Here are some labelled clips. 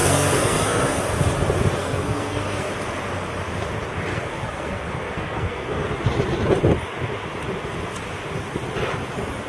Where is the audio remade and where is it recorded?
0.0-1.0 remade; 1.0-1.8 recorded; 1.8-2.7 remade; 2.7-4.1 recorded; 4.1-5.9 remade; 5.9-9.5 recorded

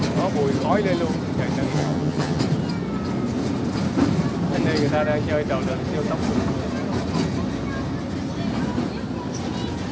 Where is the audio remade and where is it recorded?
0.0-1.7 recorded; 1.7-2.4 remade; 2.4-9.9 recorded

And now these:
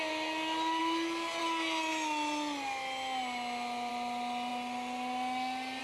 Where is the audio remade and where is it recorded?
0.0-5.8 recorded